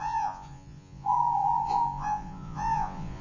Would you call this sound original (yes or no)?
no